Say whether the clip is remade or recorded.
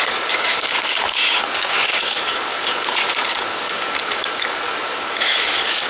remade